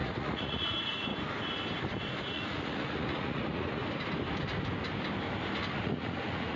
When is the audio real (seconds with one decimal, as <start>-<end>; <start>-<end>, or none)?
1.1-2.2; 3.8-5.7